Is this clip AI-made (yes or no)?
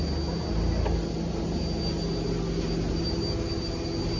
no